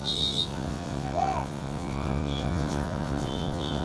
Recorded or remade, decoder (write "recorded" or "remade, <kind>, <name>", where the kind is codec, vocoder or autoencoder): remade, vocoder, WaveNeXt